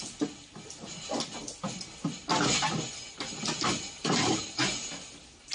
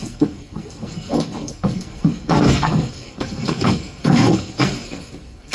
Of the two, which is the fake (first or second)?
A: second